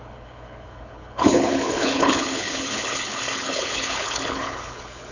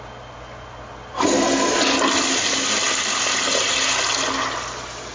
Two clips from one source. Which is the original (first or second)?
second